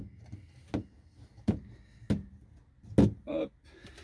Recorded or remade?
recorded